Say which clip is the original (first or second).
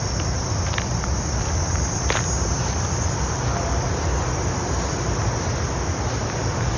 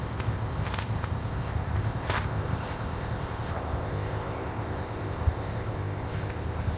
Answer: first